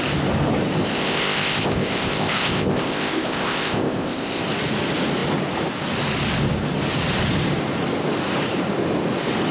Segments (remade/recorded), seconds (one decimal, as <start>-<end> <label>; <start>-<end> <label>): 0.0-0.8 recorded; 0.8-4.4 remade; 4.4-9.5 recorded